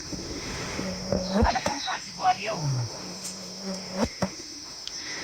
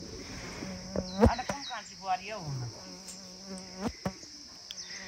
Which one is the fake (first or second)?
first